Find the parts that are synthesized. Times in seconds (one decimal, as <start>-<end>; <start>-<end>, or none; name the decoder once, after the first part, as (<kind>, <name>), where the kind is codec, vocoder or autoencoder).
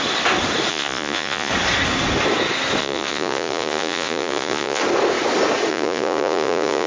0.7-1.5 (vocoder, Vocos); 2.8-4.8; 5.7-6.9